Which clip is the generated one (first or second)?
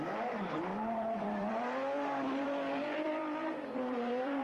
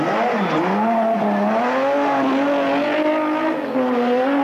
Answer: first